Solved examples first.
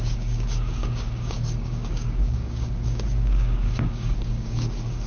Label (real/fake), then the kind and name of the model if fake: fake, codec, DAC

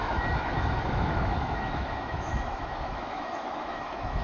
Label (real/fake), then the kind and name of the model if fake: fake, autoencoder, DAC-VAE